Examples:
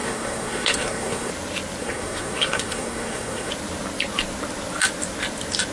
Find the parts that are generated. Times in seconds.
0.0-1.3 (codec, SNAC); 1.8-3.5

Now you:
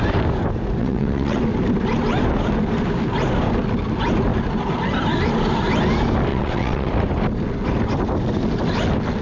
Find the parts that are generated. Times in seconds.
0.8-1.4 (vocoder, WaveNeXt); 6.3-6.9

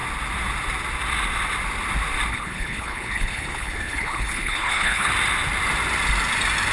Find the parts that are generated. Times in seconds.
2.3-5.1 (codec, HILCodec)

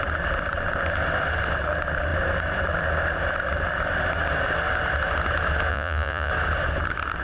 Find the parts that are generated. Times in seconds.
5.7-6.3 (vocoder, Vocos)